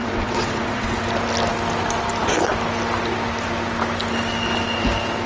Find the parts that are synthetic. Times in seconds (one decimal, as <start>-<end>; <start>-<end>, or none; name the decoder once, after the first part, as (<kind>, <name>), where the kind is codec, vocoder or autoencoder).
0.0-1.0 (vocoder, WaveNeXt)